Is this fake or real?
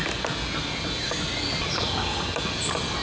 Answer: real